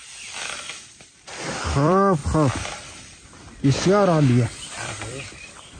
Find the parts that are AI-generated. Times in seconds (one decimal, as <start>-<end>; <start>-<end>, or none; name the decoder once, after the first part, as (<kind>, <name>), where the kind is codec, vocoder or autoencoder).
1.1-2.2 (vocoder, BigVGAN v2); 4.5-5.8